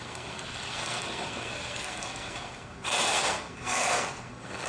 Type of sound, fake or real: fake